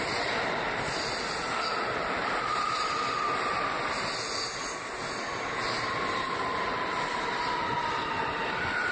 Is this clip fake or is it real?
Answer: real